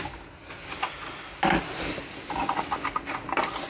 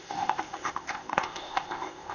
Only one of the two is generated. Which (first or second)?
second